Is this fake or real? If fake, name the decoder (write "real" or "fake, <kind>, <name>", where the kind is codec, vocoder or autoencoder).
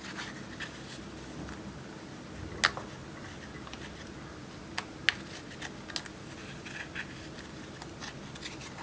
real